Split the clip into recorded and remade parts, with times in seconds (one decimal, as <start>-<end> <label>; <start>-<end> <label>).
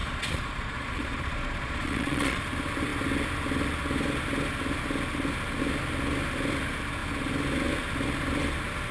0.0-2.4 remade; 2.4-8.9 recorded